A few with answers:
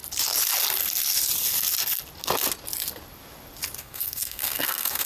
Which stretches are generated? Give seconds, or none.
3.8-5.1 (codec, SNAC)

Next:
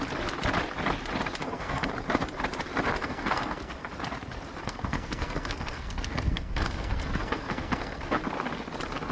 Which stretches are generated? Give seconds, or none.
1.4-1.9 (codec, SNAC); 3.0-3.9; 4.6-8.2

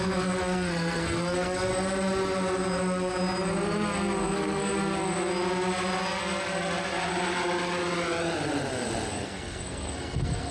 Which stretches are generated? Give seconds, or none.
0.0-1.7 (codec, SNAC); 4.2-4.7; 9.1-10.5

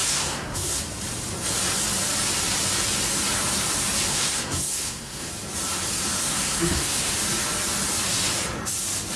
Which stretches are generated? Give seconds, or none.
0.0-0.8 (codec, SNAC); 4.1-5.3; 6.2-7.1

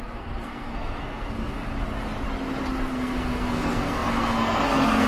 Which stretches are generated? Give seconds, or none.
0.0-1.6 (codec, SNAC); 2.9-5.1

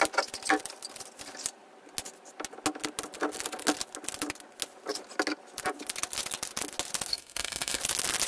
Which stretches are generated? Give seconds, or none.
7.1-7.8 (codec, SNAC)

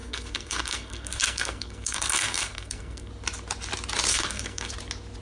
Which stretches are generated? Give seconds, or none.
0.0-3.1 (codec, SNAC); 4.1-4.7

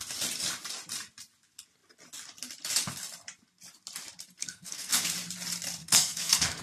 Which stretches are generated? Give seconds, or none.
4.4-5.1 (codec, SNAC); 5.8-6.6